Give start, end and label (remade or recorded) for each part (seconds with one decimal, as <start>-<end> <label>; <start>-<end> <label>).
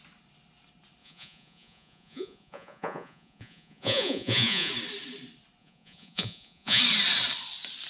0.0-1.0 recorded; 1.0-4.7 remade; 4.7-5.6 recorded; 5.6-6.8 remade; 6.8-7.9 recorded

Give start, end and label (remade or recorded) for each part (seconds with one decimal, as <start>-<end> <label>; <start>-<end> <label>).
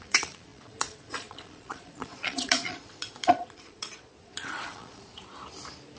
0.0-5.2 remade; 5.2-6.0 recorded